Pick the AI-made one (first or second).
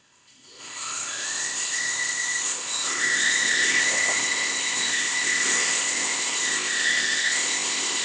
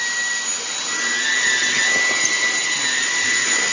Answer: first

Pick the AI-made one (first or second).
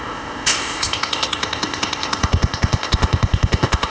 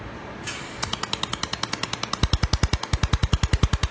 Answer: first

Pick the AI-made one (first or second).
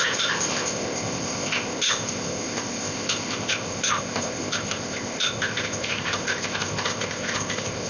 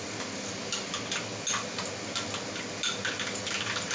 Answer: first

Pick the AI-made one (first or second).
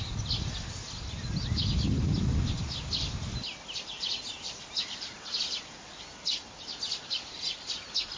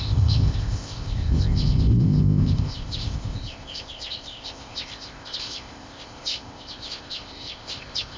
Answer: second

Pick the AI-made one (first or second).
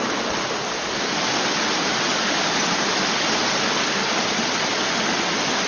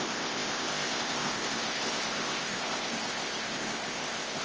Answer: second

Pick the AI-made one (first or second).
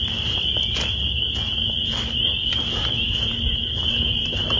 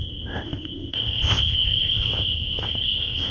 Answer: second